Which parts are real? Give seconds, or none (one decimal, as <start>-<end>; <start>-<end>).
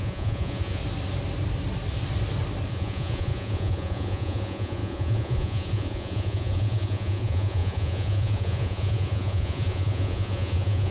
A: 0.8-2.7